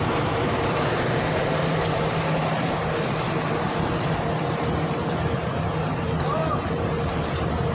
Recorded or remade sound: remade